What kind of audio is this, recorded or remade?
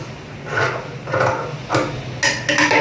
recorded